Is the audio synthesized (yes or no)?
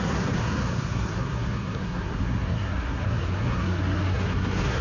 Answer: yes